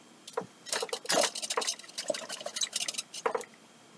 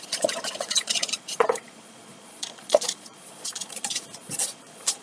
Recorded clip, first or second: first